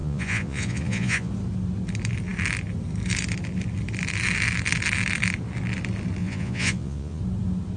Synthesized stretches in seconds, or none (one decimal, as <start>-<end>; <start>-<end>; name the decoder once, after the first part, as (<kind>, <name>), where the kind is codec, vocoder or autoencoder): 0.0-1.3 (vocoder, Vocos); 6.2-7.2